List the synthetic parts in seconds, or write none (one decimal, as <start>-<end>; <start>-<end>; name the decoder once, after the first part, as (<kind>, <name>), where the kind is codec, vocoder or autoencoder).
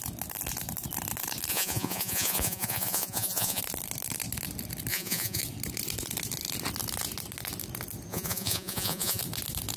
1.5-3.6 (vocoder, Vocos); 4.9-5.4; 8.1-9.2